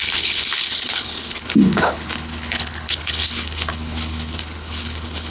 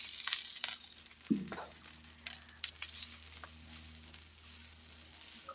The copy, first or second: first